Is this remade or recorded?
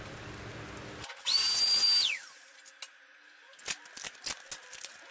recorded